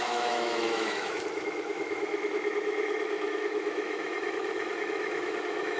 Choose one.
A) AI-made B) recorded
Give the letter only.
A